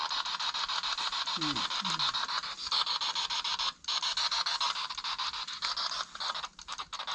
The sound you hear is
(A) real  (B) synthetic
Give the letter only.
A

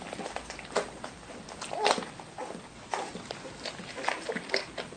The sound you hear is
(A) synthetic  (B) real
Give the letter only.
B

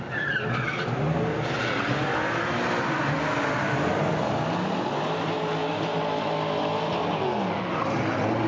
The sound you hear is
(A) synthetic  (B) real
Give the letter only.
B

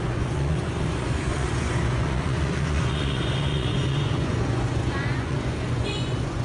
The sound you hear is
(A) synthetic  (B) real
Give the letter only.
A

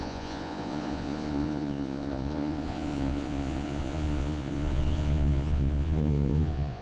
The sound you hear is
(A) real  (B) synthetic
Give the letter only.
B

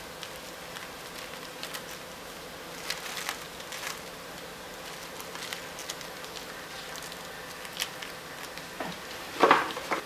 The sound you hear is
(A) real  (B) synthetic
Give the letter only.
A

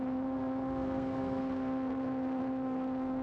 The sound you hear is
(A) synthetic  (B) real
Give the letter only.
A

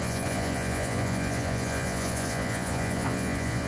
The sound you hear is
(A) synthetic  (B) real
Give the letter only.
A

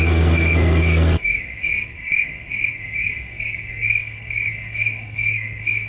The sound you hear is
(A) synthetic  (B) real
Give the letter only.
A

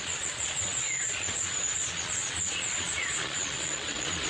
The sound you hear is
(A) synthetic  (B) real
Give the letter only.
A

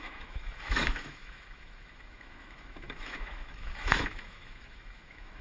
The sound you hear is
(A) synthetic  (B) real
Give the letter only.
A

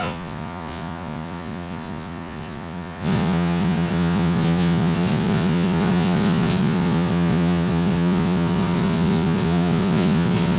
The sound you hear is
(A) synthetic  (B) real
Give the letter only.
A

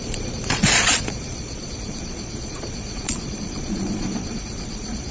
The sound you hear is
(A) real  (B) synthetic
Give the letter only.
B